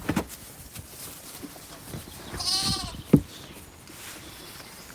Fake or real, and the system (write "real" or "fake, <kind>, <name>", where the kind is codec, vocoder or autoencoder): real